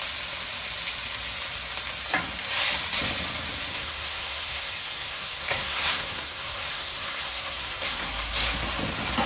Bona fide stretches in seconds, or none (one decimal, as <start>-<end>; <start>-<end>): 0.0-3.7; 8.6-9.3